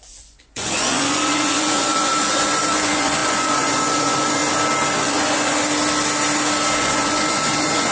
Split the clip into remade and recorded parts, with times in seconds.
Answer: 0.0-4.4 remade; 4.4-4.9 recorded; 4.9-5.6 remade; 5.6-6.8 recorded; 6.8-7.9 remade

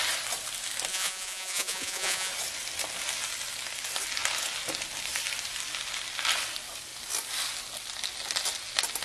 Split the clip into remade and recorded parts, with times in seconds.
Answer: 0.0-0.9 recorded; 0.9-2.3 remade; 2.3-9.0 recorded

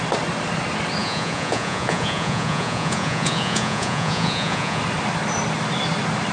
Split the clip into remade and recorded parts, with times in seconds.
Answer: 0.0-1.0 recorded; 1.0-4.8 remade; 4.8-6.3 recorded

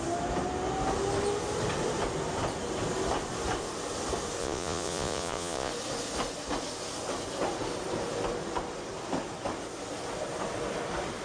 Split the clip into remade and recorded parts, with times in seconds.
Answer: 0.0-4.4 recorded; 4.4-5.7 remade; 5.7-11.2 recorded

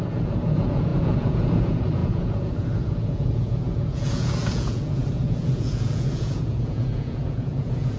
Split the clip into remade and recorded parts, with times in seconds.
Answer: 0.0-8.0 remade

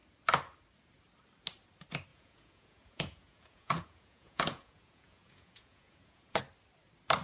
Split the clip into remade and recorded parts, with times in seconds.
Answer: 0.0-2.1 recorded; 2.1-6.4 remade; 6.4-7.2 recorded

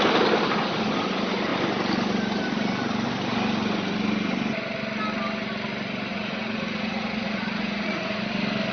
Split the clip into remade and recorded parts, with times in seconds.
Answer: 0.0-6.1 recorded; 6.1-8.2 remade; 8.2-8.7 recorded